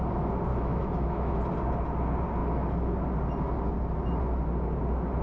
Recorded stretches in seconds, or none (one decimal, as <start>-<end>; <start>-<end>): 0.0-0.5; 1.4-5.2